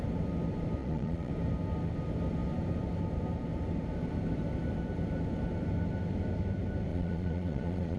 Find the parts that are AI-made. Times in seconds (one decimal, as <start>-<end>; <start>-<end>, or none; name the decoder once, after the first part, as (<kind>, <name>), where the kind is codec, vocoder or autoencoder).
0.8-1.3 (vocoder, Vocos); 6.9-8.0